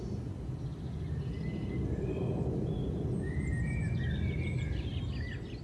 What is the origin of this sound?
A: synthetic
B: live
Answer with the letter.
B